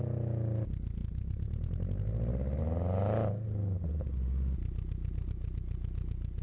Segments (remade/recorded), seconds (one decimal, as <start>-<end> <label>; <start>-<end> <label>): 0.0-6.4 recorded